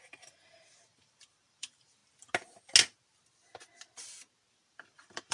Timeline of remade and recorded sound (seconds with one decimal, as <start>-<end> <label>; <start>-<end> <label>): 0.0-2.0 remade; 2.0-4.5 recorded; 4.5-5.3 remade